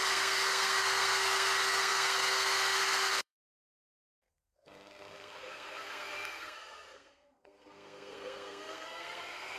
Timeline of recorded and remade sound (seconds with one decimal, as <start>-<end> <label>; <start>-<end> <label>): 0.0-9.6 remade